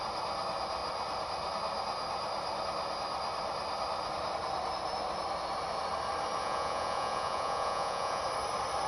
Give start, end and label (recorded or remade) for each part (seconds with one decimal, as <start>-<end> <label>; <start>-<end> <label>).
0.0-6.4 recorded; 6.4-8.2 remade; 8.2-8.9 recorded